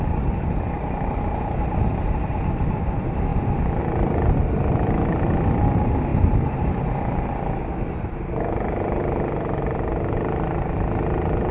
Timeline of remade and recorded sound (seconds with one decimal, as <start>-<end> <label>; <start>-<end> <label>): 0.0-11.5 recorded